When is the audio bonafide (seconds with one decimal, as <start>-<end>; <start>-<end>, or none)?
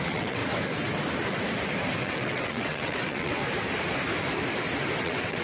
0.4-2.0; 3.4-5.0